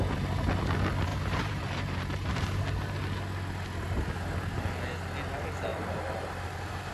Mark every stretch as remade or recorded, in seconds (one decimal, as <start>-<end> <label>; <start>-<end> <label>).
0.0-1.1 recorded; 1.1-2.6 remade; 2.6-5.7 recorded; 5.7-6.9 remade